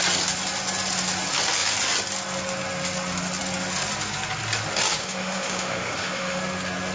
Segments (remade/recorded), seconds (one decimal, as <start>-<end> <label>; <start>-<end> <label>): 0.0-5.0 recorded; 5.0-6.4 remade; 6.4-6.9 recorded